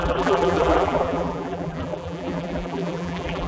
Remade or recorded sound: remade